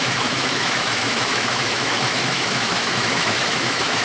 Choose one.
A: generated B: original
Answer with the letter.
A